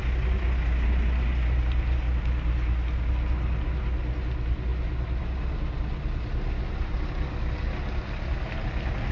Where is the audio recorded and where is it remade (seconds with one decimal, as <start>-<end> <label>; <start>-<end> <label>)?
0.0-9.1 recorded